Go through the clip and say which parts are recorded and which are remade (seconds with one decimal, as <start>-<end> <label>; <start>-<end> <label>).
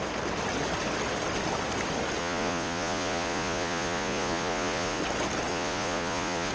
0.0-2.2 recorded; 2.2-5.0 remade; 5.0-5.5 recorded; 5.5-6.5 remade